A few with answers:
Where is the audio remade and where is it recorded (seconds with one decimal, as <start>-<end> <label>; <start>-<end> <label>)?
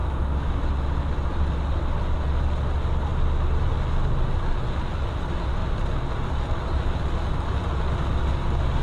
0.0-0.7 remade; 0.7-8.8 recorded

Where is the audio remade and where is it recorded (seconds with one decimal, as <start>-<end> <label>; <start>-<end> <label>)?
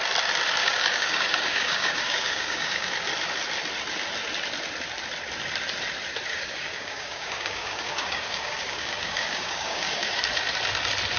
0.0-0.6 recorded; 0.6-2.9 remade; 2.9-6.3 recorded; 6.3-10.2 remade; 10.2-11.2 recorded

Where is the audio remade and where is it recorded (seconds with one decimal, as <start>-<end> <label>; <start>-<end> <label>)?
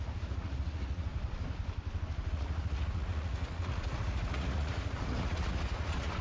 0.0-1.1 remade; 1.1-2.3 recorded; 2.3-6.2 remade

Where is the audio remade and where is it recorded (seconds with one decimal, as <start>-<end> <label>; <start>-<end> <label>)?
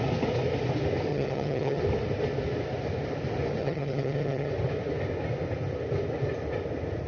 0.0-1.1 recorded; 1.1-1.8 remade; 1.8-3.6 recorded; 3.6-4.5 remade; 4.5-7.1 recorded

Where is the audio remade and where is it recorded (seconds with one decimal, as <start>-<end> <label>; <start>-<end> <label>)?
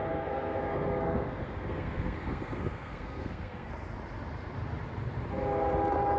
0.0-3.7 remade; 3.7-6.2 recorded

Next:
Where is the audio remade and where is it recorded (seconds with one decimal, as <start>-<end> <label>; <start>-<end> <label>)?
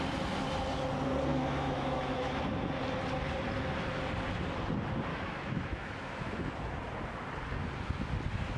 0.0-1.3 recorded; 1.3-2.4 remade; 2.4-5.1 recorded; 5.1-6.5 remade; 6.5-8.6 recorded